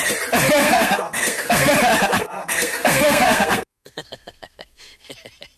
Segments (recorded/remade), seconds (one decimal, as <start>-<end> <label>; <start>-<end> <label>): 0.0-0.6 recorded; 0.6-1.7 remade; 1.7-2.2 recorded; 2.2-5.1 remade; 5.1-5.6 recorded